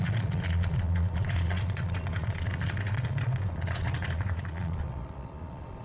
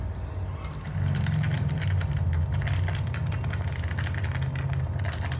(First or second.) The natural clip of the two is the second